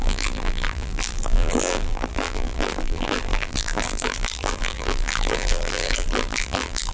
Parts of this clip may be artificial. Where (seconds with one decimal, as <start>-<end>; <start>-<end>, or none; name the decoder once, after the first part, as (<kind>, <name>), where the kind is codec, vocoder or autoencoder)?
0.0-6.9 (vocoder, BigVGAN v2)